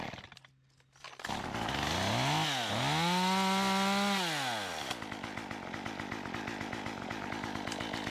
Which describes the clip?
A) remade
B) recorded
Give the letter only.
B